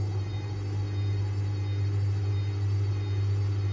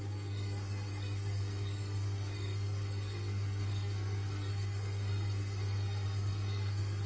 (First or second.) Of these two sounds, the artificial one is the second